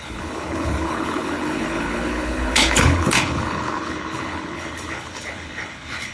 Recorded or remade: remade